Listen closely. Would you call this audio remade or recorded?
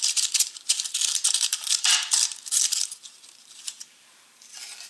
remade